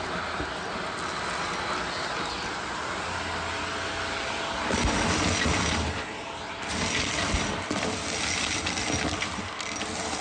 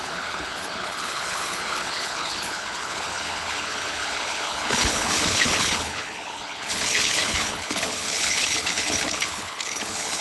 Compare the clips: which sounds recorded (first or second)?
first